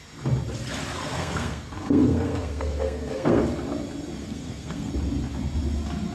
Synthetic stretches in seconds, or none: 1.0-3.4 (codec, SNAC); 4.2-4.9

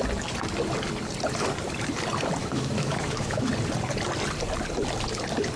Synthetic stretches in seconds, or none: 2.4-3.5 (autoencoder, DAC-VAE)

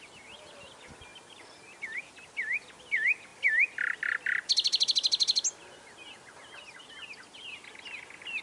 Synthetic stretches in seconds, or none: none

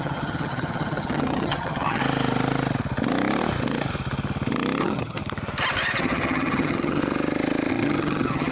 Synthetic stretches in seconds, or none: 0.0-2.0 (vocoder, HiFi-GAN); 4.8-5.2; 6.0-7.0; 7.7-8.5

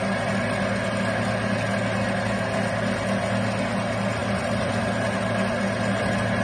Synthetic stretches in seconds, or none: 4.2-4.8 (vocoder, BigVGAN v2)

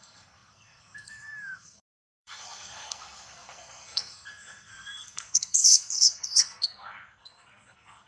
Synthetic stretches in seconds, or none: 0.0-8.1 (codec, SNAC)

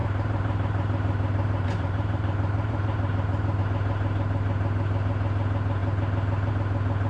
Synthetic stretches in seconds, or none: 0.0-3.6 (vocoder, BigVGAN v2)